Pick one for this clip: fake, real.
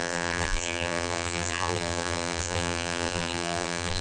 fake